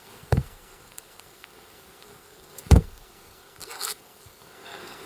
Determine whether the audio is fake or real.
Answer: fake